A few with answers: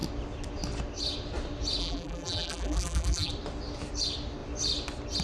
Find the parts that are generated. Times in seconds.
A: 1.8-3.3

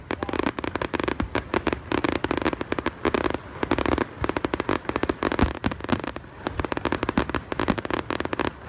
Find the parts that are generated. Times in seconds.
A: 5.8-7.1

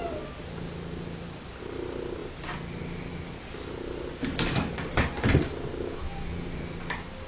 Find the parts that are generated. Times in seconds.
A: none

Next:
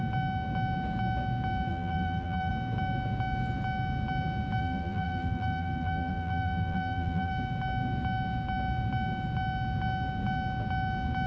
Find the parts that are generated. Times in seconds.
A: 1.7-2.5; 4.6-7.3